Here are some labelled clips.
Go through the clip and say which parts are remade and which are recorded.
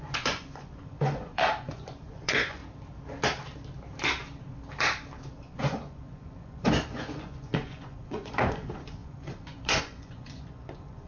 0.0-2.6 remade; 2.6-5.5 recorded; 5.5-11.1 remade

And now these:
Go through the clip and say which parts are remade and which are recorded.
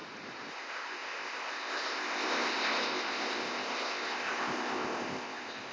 0.0-0.5 recorded; 0.5-5.7 remade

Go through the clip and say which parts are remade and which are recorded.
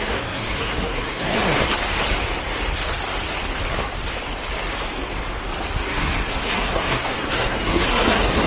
0.0-1.3 remade; 1.3-5.8 recorded; 5.8-8.5 remade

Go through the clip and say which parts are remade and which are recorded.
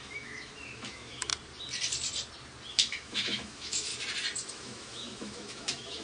0.0-1.3 remade; 1.3-2.7 recorded; 2.7-3.9 remade; 3.9-4.5 recorded; 4.5-6.0 remade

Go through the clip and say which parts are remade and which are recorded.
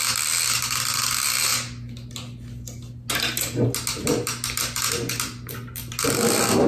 0.0-6.7 recorded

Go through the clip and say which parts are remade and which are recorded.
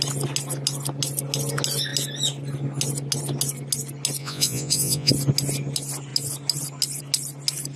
0.0-4.2 recorded; 4.2-5.1 remade; 5.1-7.8 recorded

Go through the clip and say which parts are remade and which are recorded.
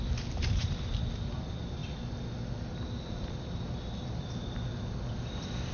0.0-5.7 recorded